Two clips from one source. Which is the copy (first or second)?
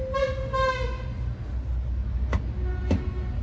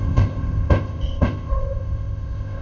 second